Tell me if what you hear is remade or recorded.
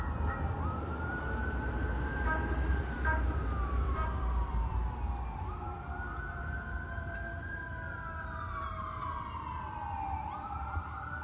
remade